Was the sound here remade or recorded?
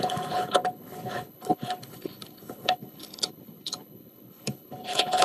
remade